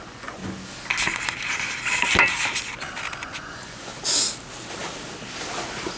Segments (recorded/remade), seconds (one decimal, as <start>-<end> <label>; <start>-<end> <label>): 0.0-0.4 remade; 0.4-3.2 recorded; 3.2-3.9 remade; 3.9-6.0 recorded